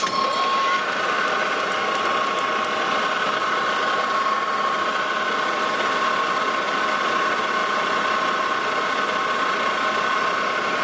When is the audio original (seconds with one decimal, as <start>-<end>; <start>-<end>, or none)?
0.0-10.8